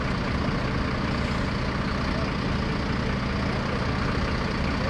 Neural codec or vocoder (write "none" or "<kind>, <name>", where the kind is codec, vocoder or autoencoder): none